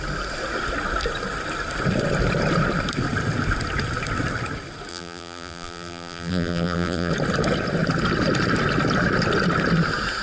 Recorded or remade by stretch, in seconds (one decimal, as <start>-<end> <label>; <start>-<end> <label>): 0.0-4.9 recorded; 4.9-7.1 remade; 7.1-10.2 recorded